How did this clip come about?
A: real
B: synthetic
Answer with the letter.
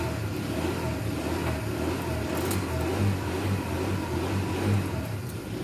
A